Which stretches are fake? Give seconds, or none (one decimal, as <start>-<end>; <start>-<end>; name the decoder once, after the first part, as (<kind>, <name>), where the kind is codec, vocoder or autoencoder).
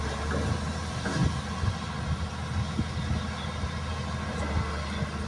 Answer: none